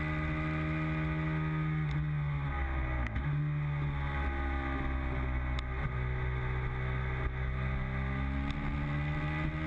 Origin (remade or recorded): recorded